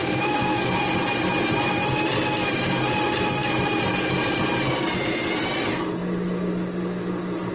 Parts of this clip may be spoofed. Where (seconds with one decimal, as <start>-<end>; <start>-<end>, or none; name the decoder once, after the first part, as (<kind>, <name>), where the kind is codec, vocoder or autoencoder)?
none